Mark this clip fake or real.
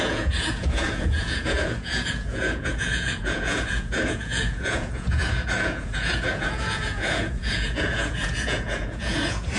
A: fake